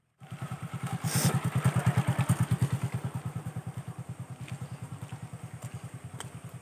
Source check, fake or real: real